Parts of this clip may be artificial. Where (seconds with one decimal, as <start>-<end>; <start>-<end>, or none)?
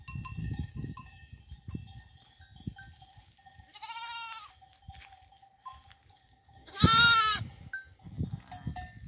0.4-1.4; 6.2-7.4